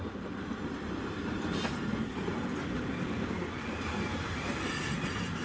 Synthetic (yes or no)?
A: no